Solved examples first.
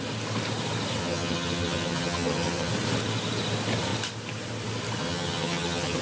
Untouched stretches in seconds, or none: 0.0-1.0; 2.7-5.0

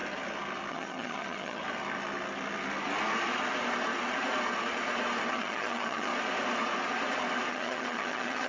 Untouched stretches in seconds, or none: 0.0-0.7; 1.6-5.3; 6.1-7.5

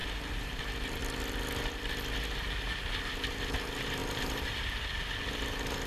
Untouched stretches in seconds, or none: 0.6-4.0; 4.8-5.9

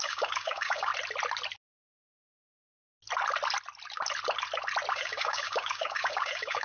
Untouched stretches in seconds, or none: 0.9-4.9